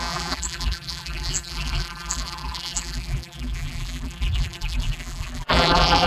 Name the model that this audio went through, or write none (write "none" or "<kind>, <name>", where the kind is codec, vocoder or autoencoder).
vocoder, BigVGAN v2